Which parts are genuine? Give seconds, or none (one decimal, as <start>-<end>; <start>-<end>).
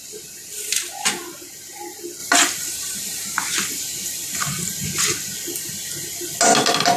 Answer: 0.0-7.0